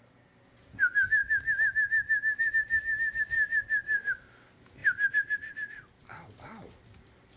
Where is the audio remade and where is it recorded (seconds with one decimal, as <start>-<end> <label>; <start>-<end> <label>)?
0.0-7.4 recorded